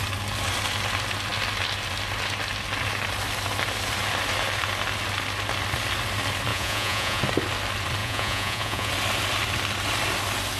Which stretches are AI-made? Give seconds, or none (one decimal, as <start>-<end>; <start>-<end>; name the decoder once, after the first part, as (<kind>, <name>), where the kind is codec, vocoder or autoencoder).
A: 6.5-7.2 (vocoder, Vocos); 8.0-8.9